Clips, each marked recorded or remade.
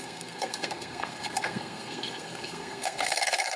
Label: remade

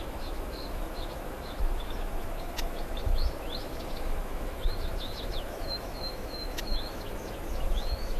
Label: remade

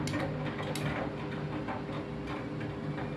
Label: recorded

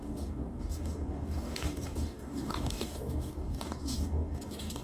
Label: remade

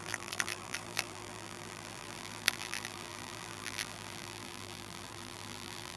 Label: remade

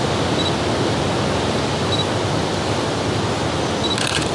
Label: recorded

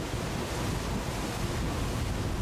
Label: recorded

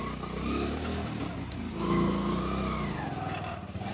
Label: recorded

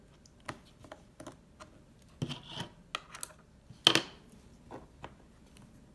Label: recorded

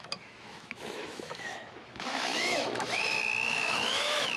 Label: remade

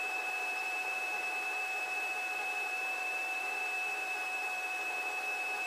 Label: remade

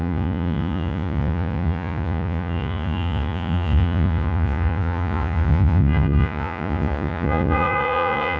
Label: remade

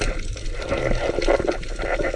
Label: recorded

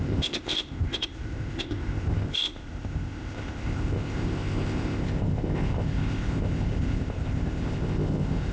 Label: remade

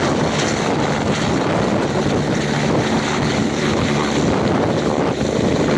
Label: recorded